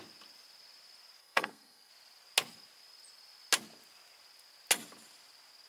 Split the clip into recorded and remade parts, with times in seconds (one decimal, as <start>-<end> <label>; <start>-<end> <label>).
0.0-1.2 recorded; 1.2-1.9 remade; 1.9-5.7 recorded